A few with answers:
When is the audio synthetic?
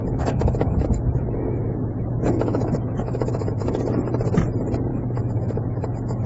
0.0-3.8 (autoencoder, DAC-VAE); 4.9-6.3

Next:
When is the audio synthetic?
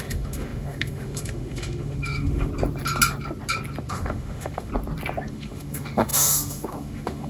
0.0-2.5 (autoencoder, DAC-VAE); 3.9-4.7; 5.3-7.3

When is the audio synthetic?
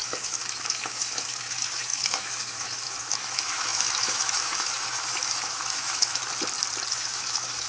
0.0-6.2 (autoencoder, DAC-VAE); 6.9-7.7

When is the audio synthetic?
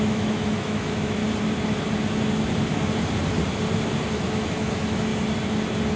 0.0-1.2 (autoencoder, DAC-VAE); 4.1-5.1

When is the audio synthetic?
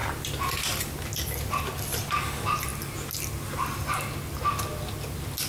none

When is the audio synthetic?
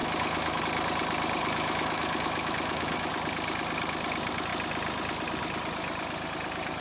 0.0-0.6 (autoencoder, DAC-VAE); 1.4-3.1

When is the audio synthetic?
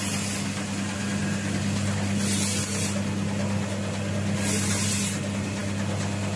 none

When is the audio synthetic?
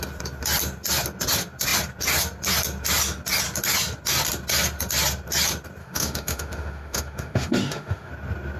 5.8-8.1 (autoencoder, DAC-VAE)